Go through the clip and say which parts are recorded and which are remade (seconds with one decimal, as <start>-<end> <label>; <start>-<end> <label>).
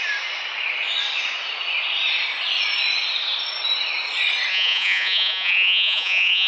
0.0-4.5 recorded; 4.5-6.5 remade